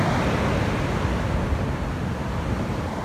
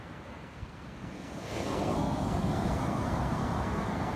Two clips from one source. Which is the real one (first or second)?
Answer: first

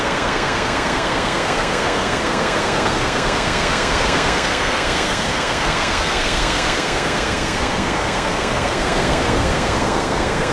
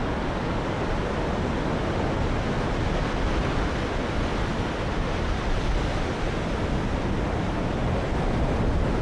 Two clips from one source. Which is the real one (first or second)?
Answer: second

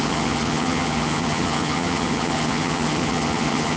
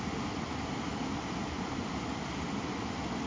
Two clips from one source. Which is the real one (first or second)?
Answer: second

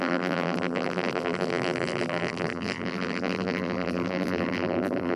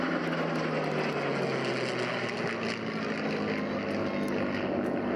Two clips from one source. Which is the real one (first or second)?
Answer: second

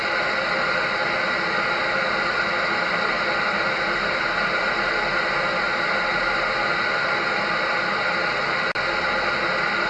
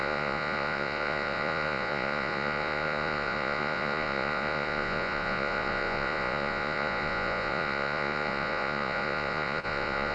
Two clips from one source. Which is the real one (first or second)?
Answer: first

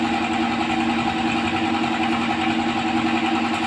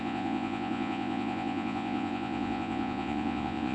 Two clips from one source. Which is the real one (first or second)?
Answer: first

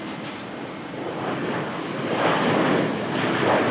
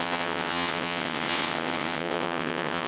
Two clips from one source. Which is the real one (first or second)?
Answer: first